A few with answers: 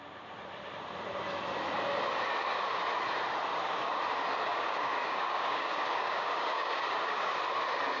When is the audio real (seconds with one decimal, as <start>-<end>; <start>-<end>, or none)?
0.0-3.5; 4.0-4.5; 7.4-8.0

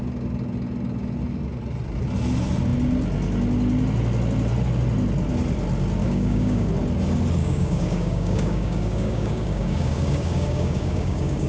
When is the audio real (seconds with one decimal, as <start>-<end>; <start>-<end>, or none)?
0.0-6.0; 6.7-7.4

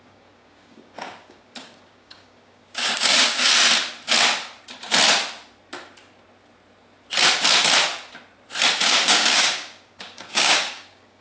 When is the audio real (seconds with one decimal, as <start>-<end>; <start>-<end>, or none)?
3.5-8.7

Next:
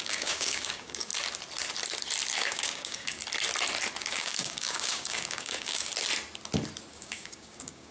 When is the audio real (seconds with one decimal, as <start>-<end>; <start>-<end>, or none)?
1.1-2.3; 3.2-4.0; 5.9-6.9

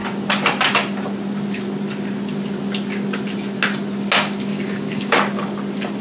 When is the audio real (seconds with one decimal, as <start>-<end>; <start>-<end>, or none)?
0.0-4.5; 5.2-6.0

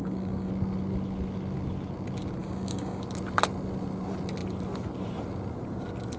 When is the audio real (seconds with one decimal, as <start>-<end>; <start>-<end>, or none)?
0.5-2.4; 3.0-6.2

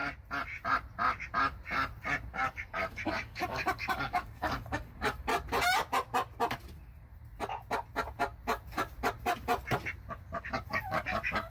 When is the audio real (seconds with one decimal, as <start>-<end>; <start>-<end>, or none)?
0.0-2.3; 5.3-10.4

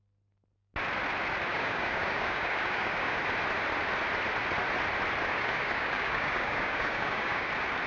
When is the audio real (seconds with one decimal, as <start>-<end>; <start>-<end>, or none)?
0.0-1.5; 3.2-5.3; 7.5-7.9